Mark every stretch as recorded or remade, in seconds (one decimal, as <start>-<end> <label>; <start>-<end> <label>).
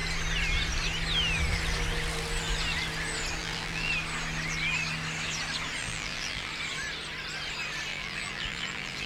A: 0.0-3.4 recorded; 3.4-3.9 remade; 3.9-5.8 recorded; 5.8-6.5 remade; 6.5-7.9 recorded; 7.9-9.1 remade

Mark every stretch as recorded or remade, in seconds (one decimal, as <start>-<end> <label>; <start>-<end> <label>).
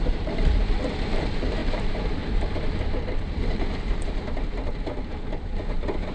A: 0.0-6.1 remade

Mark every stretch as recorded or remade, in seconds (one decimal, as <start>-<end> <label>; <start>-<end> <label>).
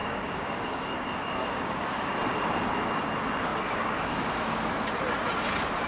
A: 0.0-2.1 remade; 2.1-3.5 recorded; 3.5-4.3 remade; 4.3-5.9 recorded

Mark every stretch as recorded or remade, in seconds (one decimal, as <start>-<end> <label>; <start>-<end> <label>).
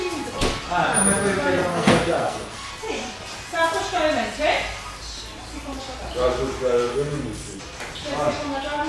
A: 0.0-1.7 recorded; 1.7-2.7 remade; 2.7-6.9 recorded; 6.9-7.6 remade; 7.6-8.9 recorded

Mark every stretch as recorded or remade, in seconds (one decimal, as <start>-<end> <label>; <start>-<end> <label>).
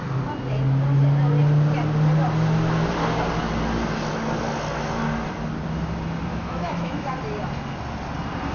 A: 0.0-6.3 recorded; 6.3-7.1 remade; 7.1-8.5 recorded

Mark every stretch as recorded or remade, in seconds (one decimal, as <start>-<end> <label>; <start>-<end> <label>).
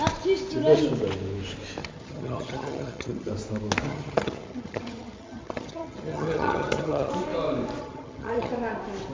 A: 0.0-1.8 recorded; 1.8-3.3 remade; 3.3-3.9 recorded; 3.9-7.1 remade; 7.1-7.8 recorded; 7.8-8.5 remade; 8.5-9.1 recorded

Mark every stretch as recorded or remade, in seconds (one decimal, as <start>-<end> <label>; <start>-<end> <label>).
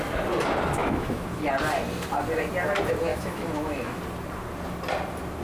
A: 0.0-0.8 recorded; 0.8-1.5 remade; 1.5-3.1 recorded; 3.1-4.0 remade; 4.0-5.4 recorded